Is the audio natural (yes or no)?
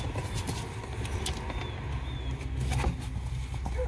yes